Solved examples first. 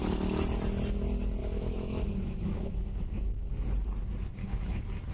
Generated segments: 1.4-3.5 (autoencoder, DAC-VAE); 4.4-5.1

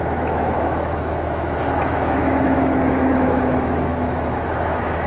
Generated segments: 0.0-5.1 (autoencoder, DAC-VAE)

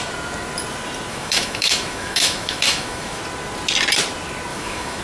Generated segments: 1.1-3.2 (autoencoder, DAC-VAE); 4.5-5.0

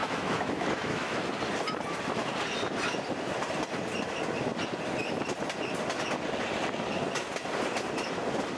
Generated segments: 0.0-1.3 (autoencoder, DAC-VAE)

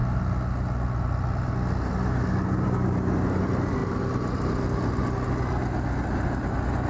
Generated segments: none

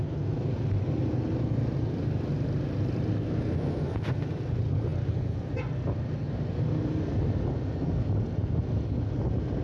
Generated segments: none

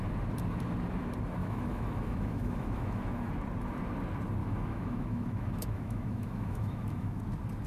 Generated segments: 1.4-3.3 (autoencoder, DAC-VAE); 4.4-7.2

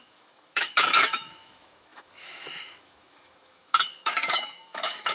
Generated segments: 0.0-5.1 (autoencoder, DAC-VAE)